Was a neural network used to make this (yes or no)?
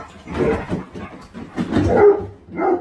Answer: no